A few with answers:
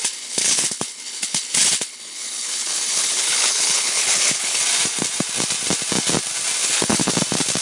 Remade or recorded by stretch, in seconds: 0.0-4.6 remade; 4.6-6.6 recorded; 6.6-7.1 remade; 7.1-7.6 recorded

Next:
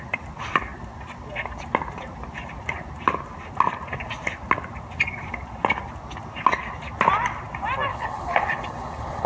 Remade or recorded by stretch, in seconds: 0.0-7.9 recorded; 7.9-9.3 remade

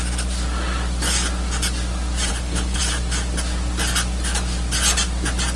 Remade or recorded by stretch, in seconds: 0.0-2.3 recorded; 2.3-2.8 remade; 2.8-5.6 recorded

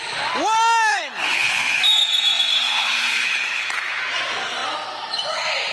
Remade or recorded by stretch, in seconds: 0.0-0.9 recorded; 0.9-1.8 remade; 1.8-2.5 recorded; 2.5-3.9 remade; 3.9-5.7 recorded

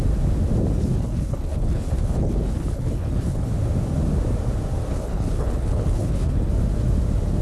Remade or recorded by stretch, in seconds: 0.0-0.8 recorded; 0.8-3.5 remade; 3.5-4.9 recorded; 4.9-6.5 remade; 6.5-7.4 recorded